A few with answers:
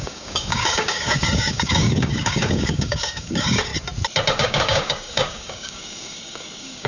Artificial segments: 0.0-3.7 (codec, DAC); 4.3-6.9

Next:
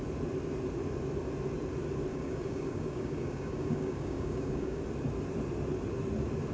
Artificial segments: 2.1-4.8 (codec, DAC)